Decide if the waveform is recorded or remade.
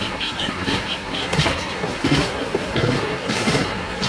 remade